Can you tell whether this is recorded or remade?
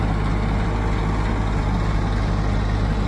recorded